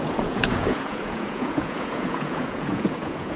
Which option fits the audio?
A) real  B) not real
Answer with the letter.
B